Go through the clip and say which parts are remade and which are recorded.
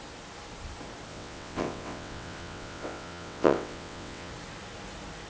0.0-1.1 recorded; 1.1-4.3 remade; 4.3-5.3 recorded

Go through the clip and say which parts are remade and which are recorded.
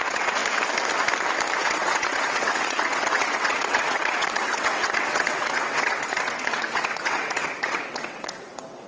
0.0-0.4 remade; 0.4-1.6 recorded; 1.6-8.9 remade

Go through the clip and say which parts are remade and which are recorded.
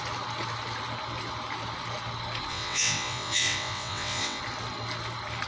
0.0-2.5 recorded; 2.5-4.4 remade; 4.4-5.5 recorded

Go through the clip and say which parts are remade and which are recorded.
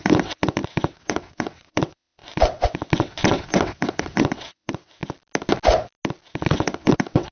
0.0-5.0 remade; 5.0-6.3 recorded; 6.3-7.3 remade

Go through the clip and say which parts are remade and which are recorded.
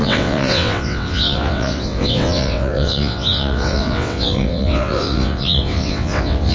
0.0-6.5 remade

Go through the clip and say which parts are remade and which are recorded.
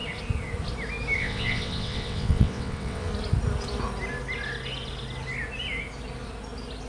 0.0-1.2 recorded; 1.2-3.1 remade; 3.1-6.9 recorded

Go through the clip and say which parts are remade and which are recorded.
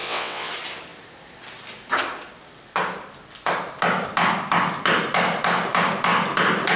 0.0-0.5 remade; 0.5-6.8 recorded